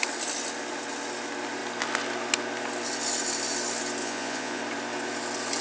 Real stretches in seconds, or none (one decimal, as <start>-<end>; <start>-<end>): 0.0-4.0; 4.6-5.6